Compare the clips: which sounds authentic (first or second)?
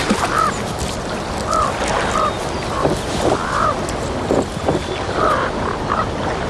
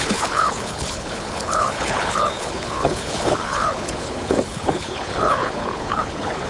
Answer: first